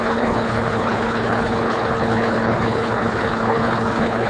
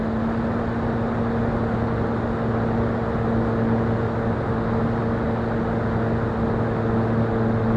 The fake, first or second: first